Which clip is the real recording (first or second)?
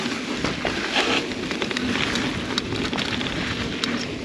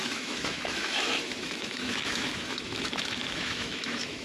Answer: first